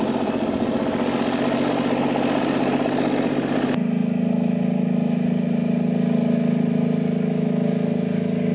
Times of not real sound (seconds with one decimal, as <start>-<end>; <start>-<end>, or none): none